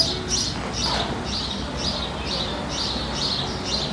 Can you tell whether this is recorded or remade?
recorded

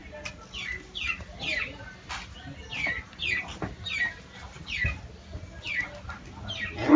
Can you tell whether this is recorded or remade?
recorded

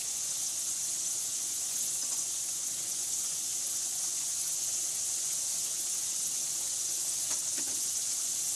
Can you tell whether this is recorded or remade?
remade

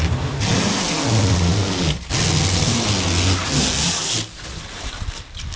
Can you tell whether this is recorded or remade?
recorded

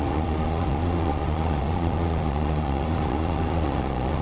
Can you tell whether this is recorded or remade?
remade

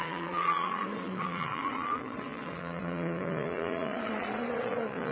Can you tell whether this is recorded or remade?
remade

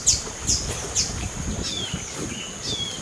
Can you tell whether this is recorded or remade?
recorded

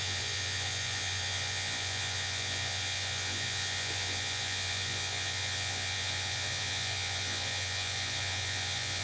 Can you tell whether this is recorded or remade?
remade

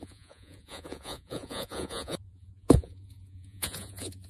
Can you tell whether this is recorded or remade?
remade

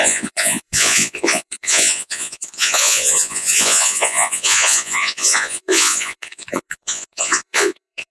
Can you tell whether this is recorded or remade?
remade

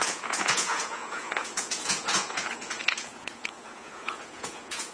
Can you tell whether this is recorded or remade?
remade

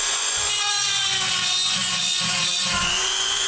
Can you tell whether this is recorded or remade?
remade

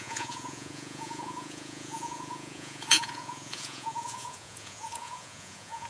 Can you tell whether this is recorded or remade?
remade